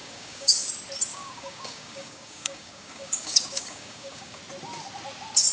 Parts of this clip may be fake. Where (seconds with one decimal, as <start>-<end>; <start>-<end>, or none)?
0.0-0.7; 1.1-4.4